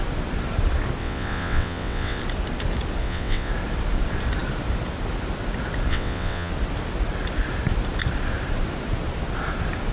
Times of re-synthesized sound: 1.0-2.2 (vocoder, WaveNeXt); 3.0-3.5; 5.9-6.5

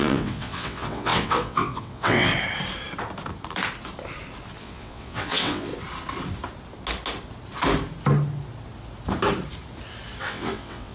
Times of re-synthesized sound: 0.0-2.3 (vocoder, WaveNeXt); 4.6-5.7; 10.2-10.9

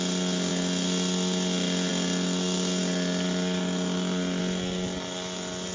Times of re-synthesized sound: none